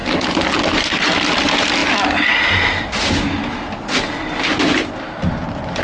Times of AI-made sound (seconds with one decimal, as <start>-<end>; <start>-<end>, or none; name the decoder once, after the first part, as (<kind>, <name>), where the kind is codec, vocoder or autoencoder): none